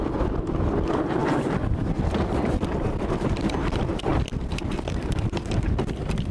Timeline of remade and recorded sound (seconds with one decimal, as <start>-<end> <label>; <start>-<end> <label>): 0.0-6.3 remade